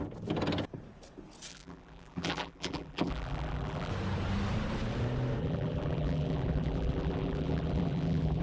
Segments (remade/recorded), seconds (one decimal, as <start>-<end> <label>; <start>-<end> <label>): 0.0-1.5 recorded; 1.5-3.9 remade; 3.9-5.4 recorded; 5.4-8.4 remade